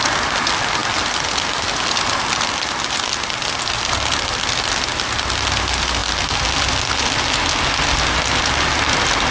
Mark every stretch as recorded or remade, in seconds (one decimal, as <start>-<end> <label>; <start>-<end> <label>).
0.0-9.3 recorded